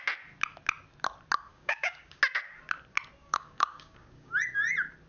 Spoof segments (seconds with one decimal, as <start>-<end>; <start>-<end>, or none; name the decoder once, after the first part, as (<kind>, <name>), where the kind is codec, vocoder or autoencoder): 1.5-2.2 (codec, DAC); 3.2-4.3